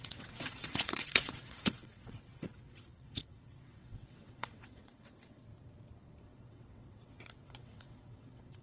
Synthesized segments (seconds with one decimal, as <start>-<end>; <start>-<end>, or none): 0.0-5.4; 6.2-8.6